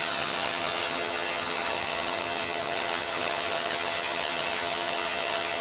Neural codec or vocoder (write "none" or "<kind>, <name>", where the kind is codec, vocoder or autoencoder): vocoder, HiFi-GAN